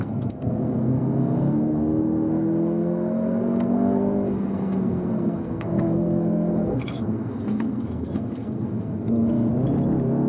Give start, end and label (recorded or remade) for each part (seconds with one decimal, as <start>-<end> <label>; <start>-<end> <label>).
0.0-9.5 remade; 9.5-10.3 recorded